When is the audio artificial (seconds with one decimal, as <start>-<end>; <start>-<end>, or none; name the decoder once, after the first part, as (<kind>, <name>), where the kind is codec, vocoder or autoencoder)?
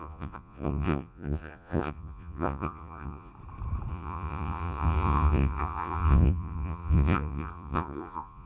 0.0-3.3 (vocoder, Vocos); 3.9-8.5